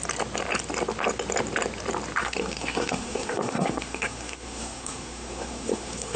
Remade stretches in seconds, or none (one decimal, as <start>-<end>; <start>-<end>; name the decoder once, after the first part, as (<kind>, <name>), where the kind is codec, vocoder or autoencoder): 2.2-6.2 (codec, SNAC)